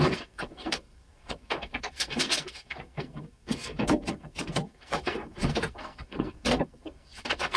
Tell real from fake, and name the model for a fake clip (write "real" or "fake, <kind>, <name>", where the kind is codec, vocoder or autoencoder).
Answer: fake, codec, SNAC